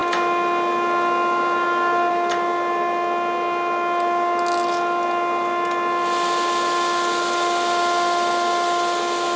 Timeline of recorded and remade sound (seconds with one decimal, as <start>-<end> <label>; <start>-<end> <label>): 0.0-9.4 recorded